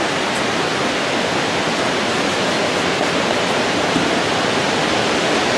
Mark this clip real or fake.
real